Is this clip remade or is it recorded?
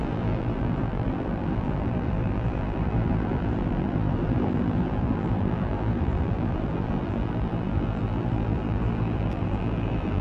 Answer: remade